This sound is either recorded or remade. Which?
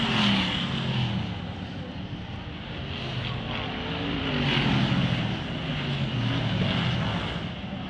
recorded